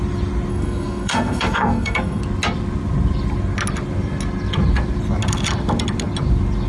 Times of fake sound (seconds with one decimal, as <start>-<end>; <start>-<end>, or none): 0.5-2.2